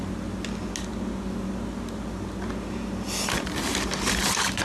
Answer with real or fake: real